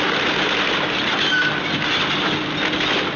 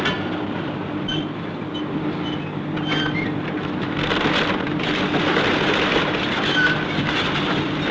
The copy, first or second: second